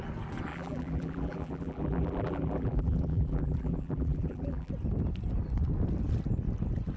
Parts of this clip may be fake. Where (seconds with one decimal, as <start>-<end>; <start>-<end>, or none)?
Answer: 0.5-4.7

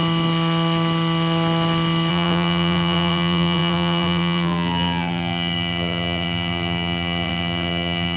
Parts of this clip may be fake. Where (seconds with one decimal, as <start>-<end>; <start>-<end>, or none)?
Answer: 2.1-8.2

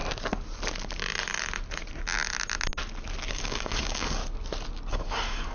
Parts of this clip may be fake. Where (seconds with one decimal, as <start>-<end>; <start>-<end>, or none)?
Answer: 3.3-4.2; 4.9-5.5

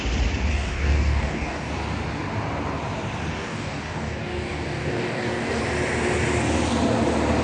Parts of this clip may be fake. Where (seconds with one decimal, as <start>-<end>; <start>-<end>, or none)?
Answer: 0.5-1.7; 3.3-5.6